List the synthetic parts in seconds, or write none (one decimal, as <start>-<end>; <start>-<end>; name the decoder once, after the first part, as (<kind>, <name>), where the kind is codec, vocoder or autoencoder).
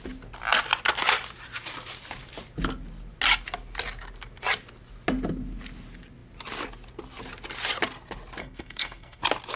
8.4-9.2 (codec, SNAC)